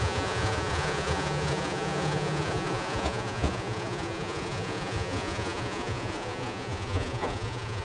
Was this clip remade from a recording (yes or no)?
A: yes